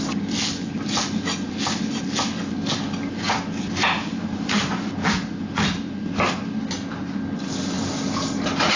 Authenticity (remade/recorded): recorded